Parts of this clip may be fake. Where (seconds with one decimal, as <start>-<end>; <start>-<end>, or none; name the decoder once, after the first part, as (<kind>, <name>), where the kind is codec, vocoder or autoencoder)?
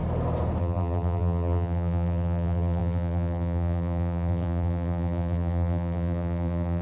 0.6-6.8 (vocoder, BigVGAN v2)